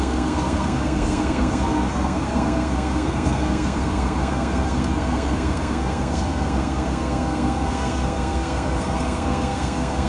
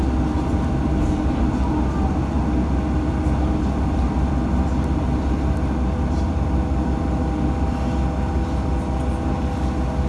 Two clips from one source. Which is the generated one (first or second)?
first